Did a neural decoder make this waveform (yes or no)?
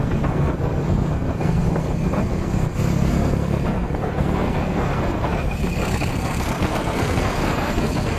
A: yes